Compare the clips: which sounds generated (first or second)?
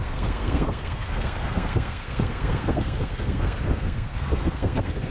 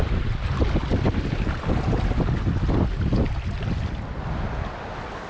first